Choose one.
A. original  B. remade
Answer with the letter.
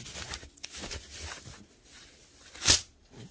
A